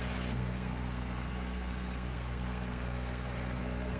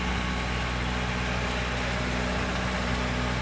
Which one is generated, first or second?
first